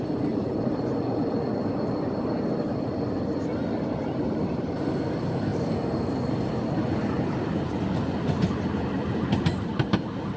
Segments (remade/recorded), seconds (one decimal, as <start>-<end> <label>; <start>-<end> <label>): 0.0-10.4 recorded